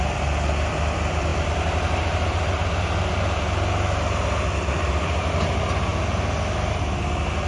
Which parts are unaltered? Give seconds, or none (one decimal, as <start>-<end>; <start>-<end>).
0.0-7.5